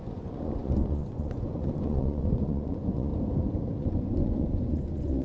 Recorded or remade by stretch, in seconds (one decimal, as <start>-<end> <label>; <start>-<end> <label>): 0.0-3.1 remade; 3.1-3.8 recorded; 3.8-5.2 remade